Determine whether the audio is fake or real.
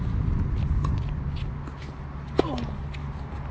real